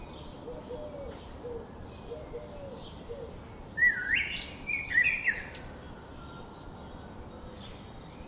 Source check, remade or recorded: recorded